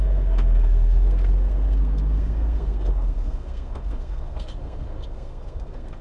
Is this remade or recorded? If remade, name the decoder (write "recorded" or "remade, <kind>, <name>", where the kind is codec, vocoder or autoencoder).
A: remade, codec, SNAC